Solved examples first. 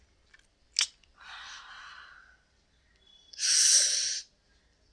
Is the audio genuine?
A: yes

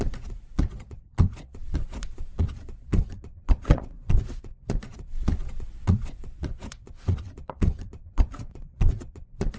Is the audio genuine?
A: no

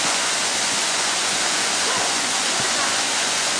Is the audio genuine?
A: no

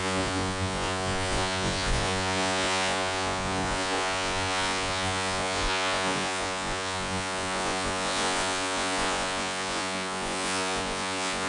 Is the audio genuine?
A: no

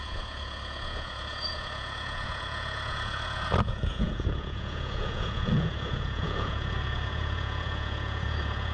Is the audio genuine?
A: no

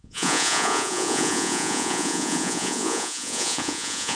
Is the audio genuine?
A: no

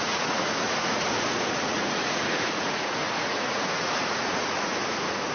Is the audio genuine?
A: no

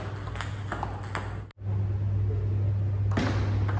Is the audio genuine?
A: yes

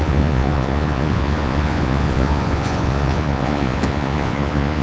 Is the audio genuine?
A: no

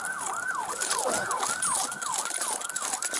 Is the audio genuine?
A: yes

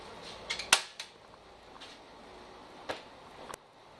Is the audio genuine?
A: yes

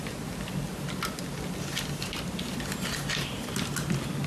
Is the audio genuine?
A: yes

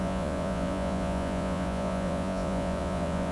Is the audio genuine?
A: no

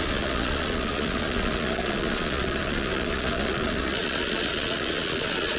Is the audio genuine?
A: no